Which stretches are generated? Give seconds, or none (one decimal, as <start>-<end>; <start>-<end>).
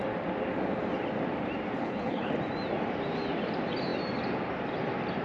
1.8-2.3